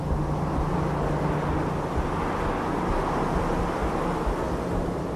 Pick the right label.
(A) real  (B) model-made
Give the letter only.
A